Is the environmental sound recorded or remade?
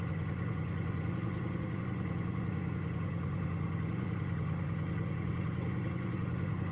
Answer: remade